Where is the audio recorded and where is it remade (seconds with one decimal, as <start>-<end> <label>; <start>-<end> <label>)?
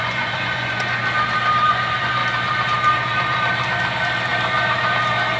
0.0-1.0 remade; 1.0-1.7 recorded; 1.7-2.2 remade; 2.2-5.4 recorded